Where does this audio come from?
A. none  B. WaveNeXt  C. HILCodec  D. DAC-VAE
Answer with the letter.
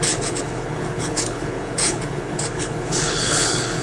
C